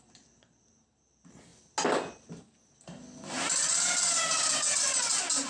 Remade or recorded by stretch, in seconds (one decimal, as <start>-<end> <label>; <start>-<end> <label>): 0.0-5.5 recorded

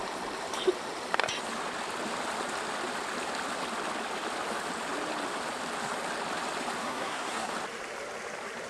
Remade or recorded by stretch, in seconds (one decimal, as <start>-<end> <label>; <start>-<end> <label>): 0.0-6.8 recorded; 6.8-7.5 remade; 7.5-8.7 recorded

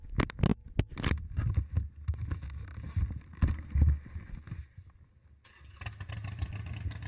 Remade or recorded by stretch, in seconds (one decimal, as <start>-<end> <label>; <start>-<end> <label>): 0.0-7.1 recorded

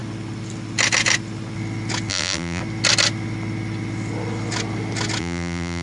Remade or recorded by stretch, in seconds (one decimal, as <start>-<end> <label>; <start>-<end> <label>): 0.0-2.1 recorded; 2.1-2.6 remade; 2.6-5.2 recorded; 5.2-5.8 remade

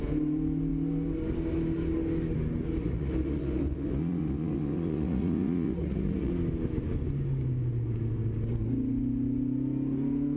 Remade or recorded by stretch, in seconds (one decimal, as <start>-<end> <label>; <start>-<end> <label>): 0.0-2.8 recorded; 2.8-6.3 remade; 6.3-10.4 recorded

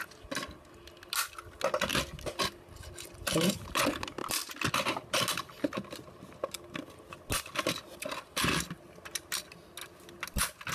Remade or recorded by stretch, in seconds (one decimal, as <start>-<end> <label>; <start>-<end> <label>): 0.0-10.7 recorded

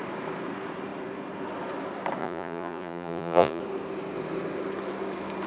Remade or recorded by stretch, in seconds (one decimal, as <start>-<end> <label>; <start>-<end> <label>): 0.0-2.2 recorded; 2.2-3.6 remade; 3.6-5.5 recorded

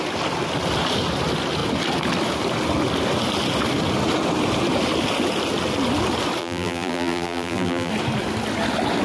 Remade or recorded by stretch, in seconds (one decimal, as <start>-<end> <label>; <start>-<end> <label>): 0.0-6.4 recorded; 6.4-7.9 remade; 7.9-9.0 recorded